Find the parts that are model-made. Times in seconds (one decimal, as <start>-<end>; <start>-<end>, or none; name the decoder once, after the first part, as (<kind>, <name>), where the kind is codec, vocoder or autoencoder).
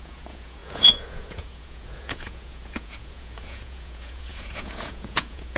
0.0-5.6 (vocoder, Vocos)